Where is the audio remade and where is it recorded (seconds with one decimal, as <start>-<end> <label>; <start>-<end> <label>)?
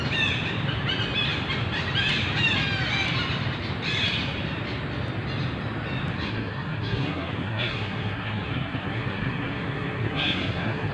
0.0-6.1 recorded; 6.1-10.9 remade